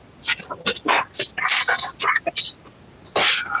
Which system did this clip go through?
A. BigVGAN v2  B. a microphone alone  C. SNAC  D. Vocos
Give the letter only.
B